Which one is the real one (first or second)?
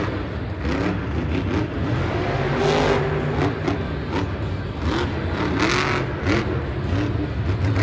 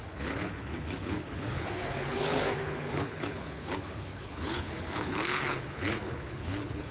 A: first